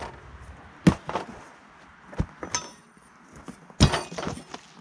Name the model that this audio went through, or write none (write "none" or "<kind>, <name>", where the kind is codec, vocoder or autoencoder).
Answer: none